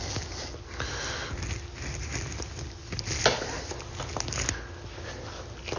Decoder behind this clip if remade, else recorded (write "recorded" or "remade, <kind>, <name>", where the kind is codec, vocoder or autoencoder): recorded